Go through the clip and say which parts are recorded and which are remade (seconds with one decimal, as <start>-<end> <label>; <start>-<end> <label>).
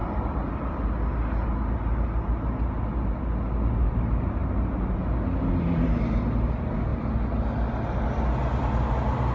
0.0-9.3 recorded